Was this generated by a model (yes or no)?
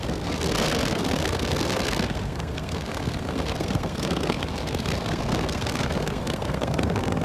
yes